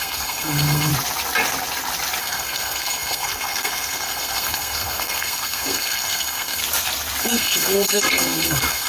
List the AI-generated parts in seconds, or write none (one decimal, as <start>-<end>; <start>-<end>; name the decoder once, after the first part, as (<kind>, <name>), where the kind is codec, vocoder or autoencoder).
0.0-0.9 (codec, SNAC); 2.2-6.6; 7.2-8.9

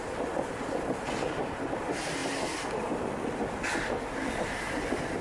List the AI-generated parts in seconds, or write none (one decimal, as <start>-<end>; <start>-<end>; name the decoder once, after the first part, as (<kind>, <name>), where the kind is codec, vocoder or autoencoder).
none